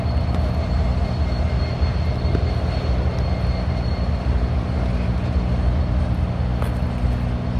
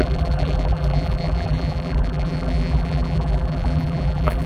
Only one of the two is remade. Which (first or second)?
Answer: second